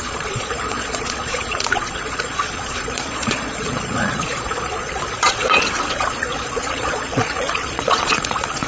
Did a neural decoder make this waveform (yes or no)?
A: yes